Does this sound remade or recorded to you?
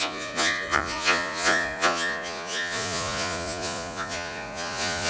remade